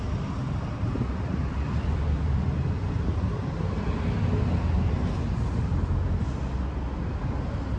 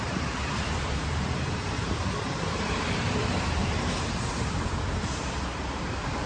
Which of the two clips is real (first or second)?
first